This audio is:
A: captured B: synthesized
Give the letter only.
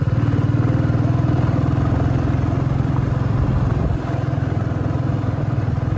A